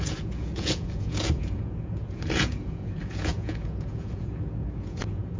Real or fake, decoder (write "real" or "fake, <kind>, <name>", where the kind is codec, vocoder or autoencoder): fake, vocoder, Vocos